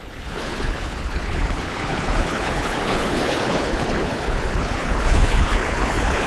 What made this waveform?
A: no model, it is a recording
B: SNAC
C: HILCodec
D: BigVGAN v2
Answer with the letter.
C